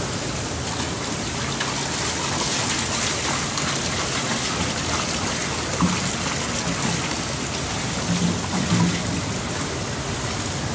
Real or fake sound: real